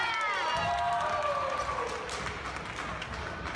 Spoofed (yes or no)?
no